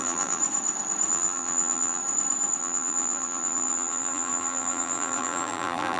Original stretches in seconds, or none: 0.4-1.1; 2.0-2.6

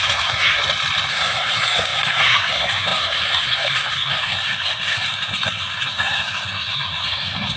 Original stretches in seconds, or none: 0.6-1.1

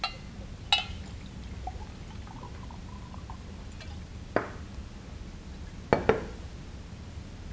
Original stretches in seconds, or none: 0.0-7.5